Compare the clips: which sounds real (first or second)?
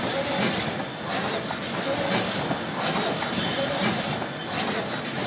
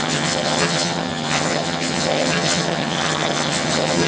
first